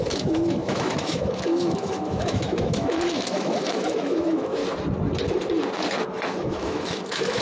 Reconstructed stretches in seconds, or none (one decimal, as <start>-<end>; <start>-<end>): 0.0-4.6; 6.4-7.4